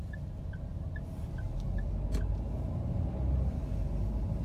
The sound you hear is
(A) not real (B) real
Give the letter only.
B